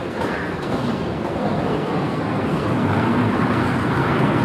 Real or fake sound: fake